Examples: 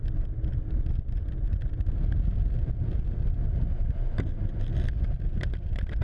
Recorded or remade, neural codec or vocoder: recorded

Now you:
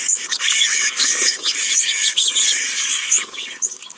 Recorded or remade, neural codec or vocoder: remade, codec, DAC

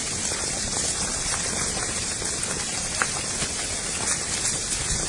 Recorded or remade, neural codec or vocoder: recorded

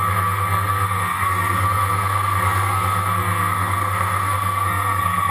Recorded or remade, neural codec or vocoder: remade, codec, SNAC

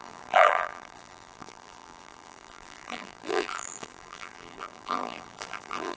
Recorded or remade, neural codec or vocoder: remade, vocoder, BigVGAN v2